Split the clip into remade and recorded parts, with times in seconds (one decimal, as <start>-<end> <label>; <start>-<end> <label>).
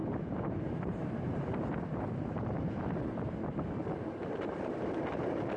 0.0-2.8 remade; 2.8-5.6 recorded